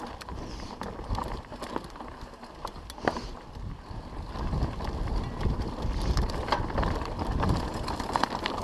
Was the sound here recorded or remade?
recorded